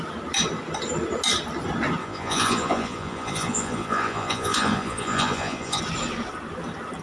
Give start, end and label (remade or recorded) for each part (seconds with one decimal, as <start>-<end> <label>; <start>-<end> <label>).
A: 0.0-2.0 recorded; 2.0-5.8 remade; 5.8-7.0 recorded